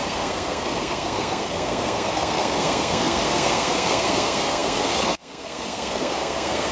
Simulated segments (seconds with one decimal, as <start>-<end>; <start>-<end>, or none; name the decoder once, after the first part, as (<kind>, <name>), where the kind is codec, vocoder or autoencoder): 0.0-6.7 (codec, SNAC)